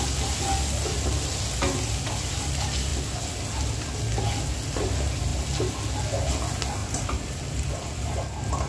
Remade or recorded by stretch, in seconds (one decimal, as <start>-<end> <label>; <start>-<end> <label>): 0.0-6.8 recorded; 6.8-8.2 remade; 8.2-8.7 recorded